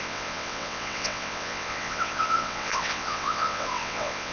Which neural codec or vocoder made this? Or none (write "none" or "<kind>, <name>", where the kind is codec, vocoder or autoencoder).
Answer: vocoder, WaveNeXt